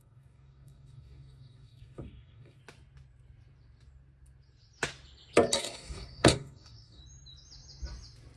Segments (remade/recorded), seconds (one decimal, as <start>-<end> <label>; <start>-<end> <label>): 0.0-2.6 remade; 2.6-5.6 recorded; 5.6-7.0 remade; 7.0-8.4 recorded

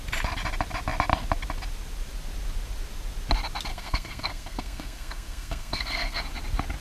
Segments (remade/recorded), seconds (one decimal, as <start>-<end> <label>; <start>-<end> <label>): 0.0-3.7 recorded; 3.7-6.2 remade; 6.2-6.8 recorded

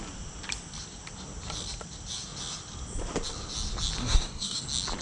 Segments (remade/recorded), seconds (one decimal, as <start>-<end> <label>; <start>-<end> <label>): 0.0-4.0 recorded; 4.0-4.6 remade; 4.6-5.0 recorded

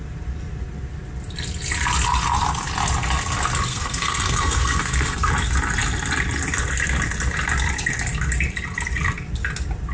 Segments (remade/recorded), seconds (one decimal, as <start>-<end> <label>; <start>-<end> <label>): 0.0-3.7 recorded; 3.7-5.3 remade; 5.3-9.9 recorded

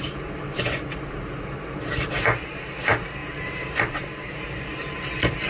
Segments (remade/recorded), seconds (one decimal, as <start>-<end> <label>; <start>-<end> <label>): 0.0-5.5 remade